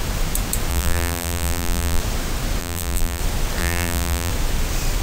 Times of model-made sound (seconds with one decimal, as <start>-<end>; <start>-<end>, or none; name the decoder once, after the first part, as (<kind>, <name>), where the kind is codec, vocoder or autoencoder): 0.7-2.0 (vocoder, BigVGAN v2); 2.6-3.2; 3.6-4.3